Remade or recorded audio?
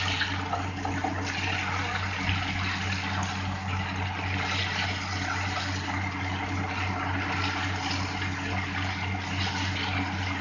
recorded